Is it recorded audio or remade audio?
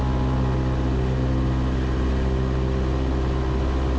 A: recorded